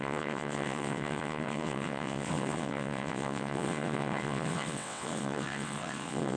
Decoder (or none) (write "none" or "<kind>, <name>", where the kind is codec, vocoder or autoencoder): vocoder, WaveNeXt